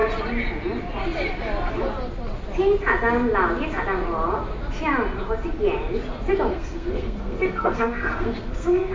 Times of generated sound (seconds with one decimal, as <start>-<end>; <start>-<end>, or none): 6.5-8.9

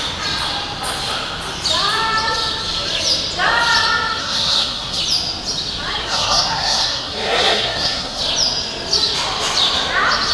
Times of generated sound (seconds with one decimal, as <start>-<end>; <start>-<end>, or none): 4.2-5.0; 6.0-8.2

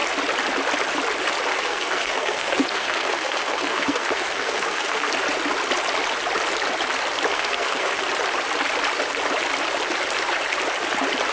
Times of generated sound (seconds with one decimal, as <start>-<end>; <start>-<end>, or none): 1.5-5.1; 7.3-8.0

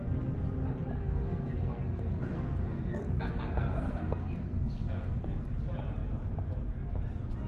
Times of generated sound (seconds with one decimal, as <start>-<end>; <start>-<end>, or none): 1.0-5.5

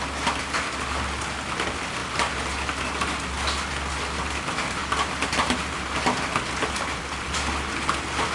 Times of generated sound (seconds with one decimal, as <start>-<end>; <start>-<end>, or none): none